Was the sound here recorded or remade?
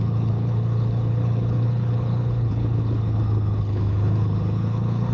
remade